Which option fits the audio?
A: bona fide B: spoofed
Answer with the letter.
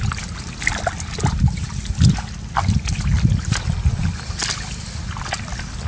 A